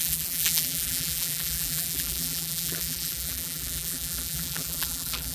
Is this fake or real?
fake